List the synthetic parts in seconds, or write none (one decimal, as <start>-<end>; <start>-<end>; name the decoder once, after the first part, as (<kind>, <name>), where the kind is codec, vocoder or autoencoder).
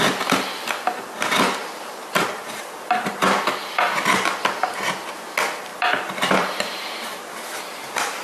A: 1.6-3.4 (vocoder, BigVGAN v2); 5.7-7.3